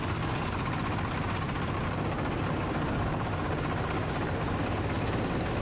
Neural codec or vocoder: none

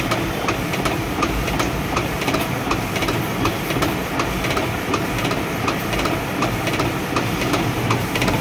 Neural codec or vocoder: vocoder, BigVGAN v2